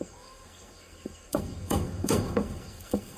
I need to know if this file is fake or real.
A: fake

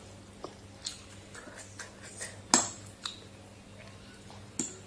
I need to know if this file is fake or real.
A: real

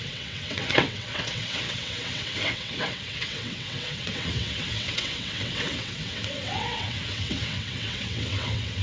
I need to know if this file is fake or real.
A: fake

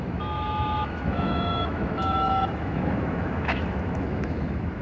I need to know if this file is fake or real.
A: fake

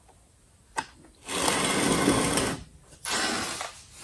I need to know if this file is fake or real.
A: real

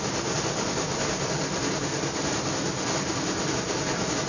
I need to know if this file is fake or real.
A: real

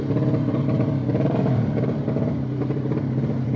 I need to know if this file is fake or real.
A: fake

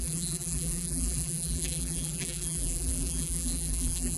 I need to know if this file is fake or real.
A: fake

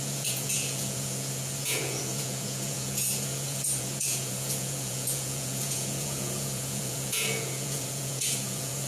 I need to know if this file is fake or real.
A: fake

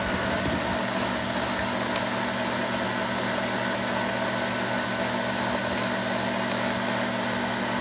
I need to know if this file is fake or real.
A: real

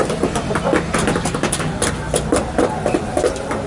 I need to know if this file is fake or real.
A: real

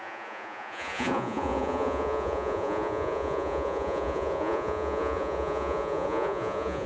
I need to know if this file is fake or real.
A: fake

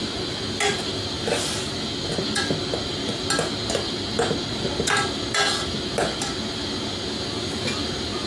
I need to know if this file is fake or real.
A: real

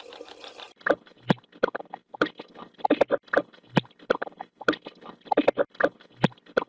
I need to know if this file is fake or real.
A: real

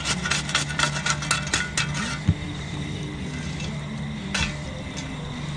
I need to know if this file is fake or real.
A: real